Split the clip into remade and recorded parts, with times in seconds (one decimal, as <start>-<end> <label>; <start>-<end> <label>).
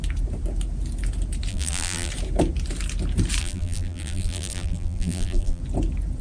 0.0-1.5 recorded; 1.5-2.1 remade; 2.1-3.4 recorded; 3.4-5.6 remade; 5.6-6.2 recorded